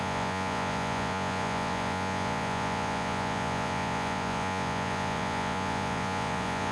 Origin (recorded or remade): remade